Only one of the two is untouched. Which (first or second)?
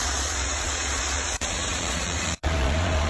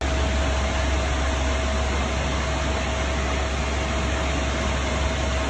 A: second